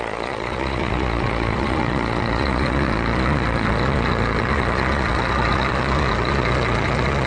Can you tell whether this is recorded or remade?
remade